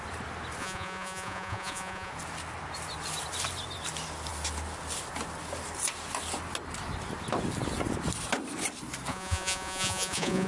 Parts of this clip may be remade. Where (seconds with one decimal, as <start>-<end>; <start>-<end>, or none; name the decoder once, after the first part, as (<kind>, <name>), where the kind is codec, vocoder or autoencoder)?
0.6-2.1 (vocoder, Vocos); 9.1-10.5